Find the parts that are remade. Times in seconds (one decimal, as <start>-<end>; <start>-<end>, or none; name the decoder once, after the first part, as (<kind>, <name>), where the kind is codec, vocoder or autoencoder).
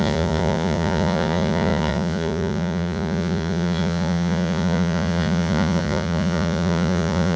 0.0-7.4 (vocoder, Vocos)